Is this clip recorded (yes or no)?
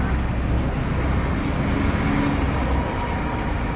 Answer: yes